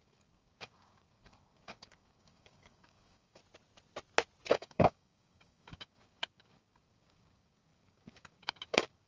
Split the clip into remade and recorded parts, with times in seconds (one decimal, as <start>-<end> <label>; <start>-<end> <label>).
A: 0.0-3.4 remade; 3.4-4.5 recorded; 4.5-9.1 remade